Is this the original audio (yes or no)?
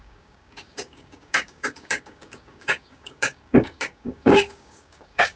no